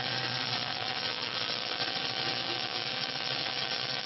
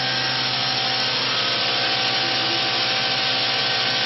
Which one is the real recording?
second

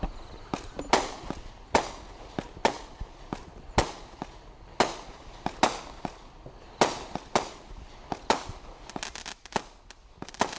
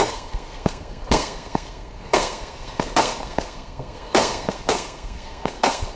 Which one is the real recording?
first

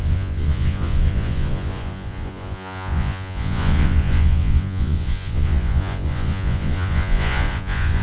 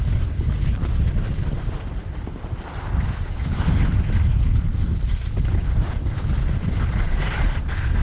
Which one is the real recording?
second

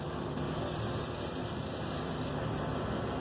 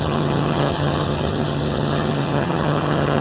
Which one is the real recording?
first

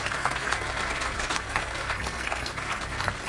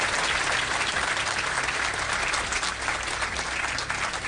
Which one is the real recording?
second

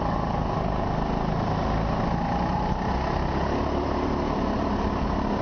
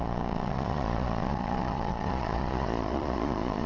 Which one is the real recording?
first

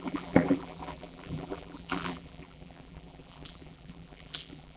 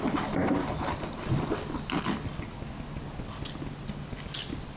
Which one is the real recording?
second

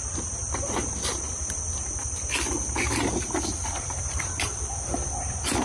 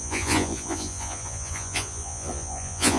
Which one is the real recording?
first